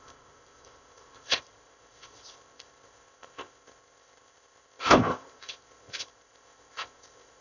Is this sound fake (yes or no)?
yes